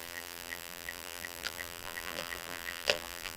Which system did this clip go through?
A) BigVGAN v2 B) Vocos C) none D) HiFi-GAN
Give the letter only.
A